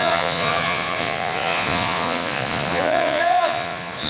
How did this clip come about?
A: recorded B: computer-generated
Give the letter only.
B